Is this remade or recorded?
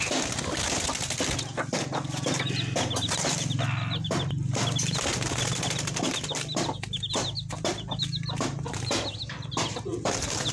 recorded